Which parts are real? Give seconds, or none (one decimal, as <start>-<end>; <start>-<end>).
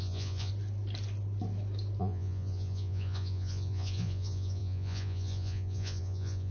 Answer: 0.5-2.0